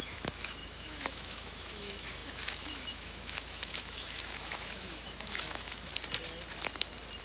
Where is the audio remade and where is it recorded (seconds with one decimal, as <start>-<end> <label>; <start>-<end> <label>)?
0.0-5.9 remade; 5.9-7.2 recorded